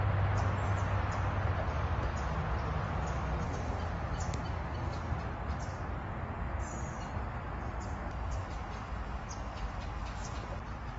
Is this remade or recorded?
recorded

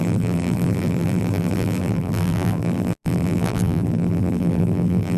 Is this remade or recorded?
remade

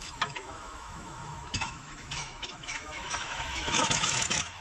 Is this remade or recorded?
remade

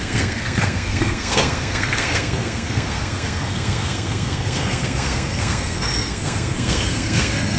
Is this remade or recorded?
remade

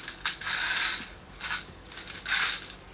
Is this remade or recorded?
remade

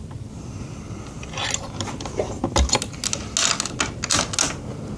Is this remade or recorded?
recorded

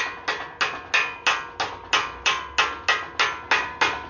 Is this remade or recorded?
recorded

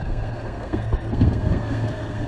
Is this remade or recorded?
remade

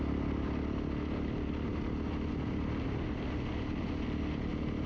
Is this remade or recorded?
recorded